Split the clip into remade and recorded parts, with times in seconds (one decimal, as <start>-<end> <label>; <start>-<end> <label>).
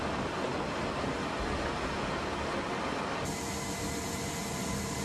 0.0-5.0 recorded